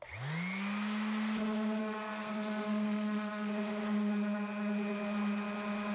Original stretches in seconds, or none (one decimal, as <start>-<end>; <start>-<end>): 0.0-1.8; 3.5-5.9